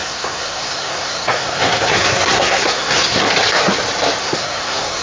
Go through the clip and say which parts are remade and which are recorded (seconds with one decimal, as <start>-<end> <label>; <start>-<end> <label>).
0.0-3.2 remade; 3.2-4.2 recorded; 4.2-5.0 remade